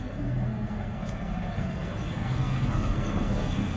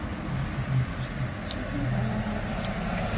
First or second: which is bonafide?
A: second